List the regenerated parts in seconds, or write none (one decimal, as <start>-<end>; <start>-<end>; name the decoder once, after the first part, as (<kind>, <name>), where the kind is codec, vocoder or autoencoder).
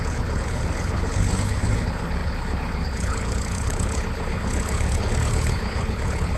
0.0-6.4 (codec, HILCodec)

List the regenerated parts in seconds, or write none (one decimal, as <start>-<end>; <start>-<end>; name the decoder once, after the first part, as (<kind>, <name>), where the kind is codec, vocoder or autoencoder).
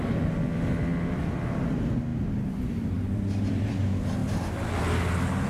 2.1-3.7 (vocoder, BigVGAN v2); 4.2-4.8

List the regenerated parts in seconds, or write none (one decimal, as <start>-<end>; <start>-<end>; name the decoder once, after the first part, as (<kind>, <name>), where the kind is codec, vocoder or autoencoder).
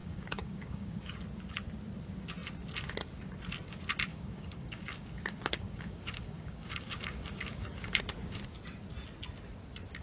0.0-1.1 (codec, DAC); 4.1-8.0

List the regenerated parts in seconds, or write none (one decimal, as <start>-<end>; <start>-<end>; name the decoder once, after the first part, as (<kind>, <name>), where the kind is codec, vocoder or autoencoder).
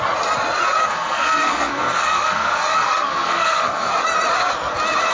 0.8-3.9 (codec, SNAC)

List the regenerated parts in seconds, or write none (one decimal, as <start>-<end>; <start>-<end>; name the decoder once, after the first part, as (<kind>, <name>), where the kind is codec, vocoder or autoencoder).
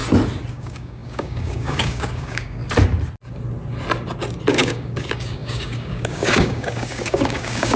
0.5-2.6 (codec, DAC); 4.5-7.8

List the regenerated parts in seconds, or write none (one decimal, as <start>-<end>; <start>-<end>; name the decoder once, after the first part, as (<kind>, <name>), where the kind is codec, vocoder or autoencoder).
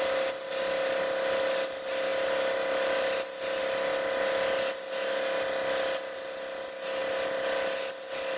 none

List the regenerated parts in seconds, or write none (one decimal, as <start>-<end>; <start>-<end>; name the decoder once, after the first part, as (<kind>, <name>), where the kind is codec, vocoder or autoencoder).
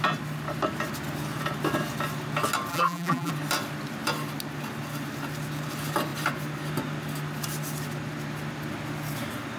2.7-3.3 (vocoder, BigVGAN v2)